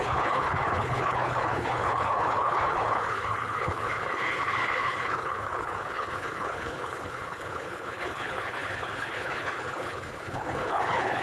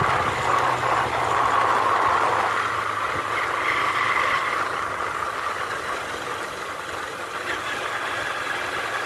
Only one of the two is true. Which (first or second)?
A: second